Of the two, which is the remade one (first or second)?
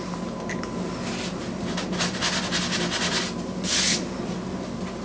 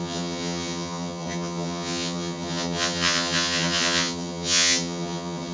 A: second